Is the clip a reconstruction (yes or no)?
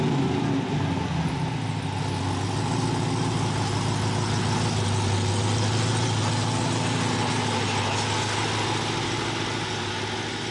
no